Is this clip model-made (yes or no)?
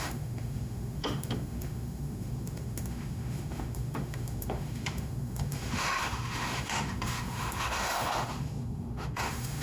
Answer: yes